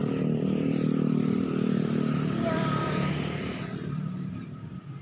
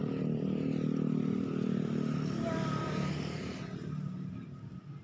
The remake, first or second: first